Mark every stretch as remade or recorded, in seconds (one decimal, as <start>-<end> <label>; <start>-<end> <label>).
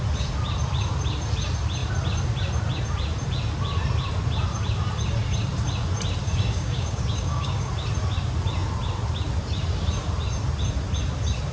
0.0-6.2 recorded; 6.2-7.7 remade; 7.7-11.5 recorded